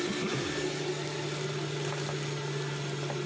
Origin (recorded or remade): recorded